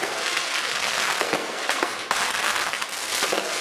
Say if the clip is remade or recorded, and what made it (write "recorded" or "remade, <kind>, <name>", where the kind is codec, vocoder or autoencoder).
remade, codec, SNAC